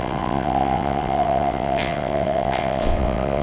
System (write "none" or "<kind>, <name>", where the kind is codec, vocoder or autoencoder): vocoder, WaveNeXt